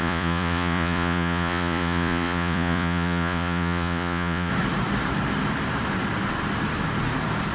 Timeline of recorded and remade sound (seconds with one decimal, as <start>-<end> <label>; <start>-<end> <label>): 0.0-4.5 remade; 4.5-7.5 recorded